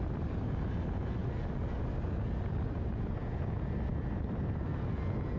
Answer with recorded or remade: recorded